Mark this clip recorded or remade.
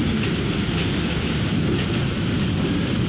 recorded